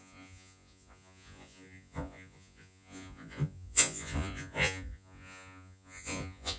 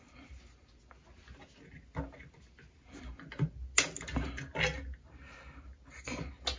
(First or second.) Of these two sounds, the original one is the second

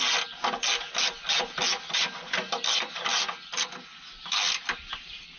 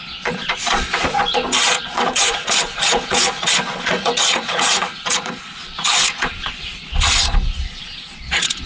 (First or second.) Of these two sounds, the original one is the first